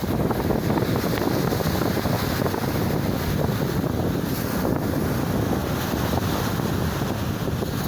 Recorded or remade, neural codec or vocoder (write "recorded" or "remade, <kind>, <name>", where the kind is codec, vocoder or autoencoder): recorded